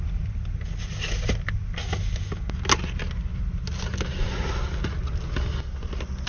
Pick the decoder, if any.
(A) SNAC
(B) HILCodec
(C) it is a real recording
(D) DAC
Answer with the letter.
C